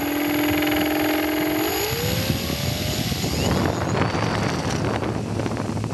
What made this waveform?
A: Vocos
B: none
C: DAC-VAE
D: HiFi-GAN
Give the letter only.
B